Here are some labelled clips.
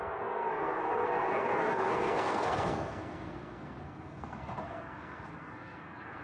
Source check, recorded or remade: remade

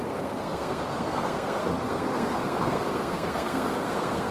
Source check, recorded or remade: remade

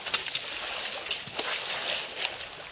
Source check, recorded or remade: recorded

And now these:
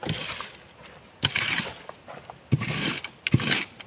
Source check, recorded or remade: recorded